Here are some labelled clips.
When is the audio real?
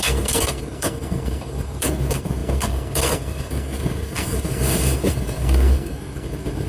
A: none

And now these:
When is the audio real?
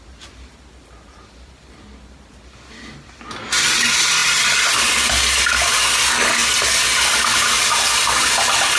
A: 0.0-8.8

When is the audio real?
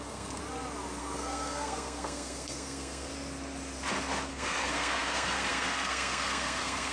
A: 0.4-1.0; 3.1-4.3